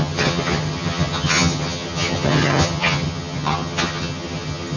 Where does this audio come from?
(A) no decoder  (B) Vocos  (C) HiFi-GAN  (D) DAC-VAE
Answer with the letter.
C